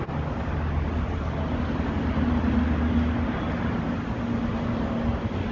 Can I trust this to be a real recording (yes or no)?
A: yes